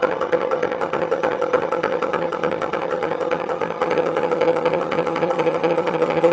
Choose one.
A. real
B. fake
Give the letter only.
B